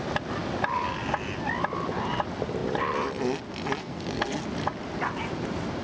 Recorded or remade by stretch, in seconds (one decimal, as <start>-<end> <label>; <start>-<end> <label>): 0.0-3.8 recorded; 3.8-4.4 remade; 4.4-5.8 recorded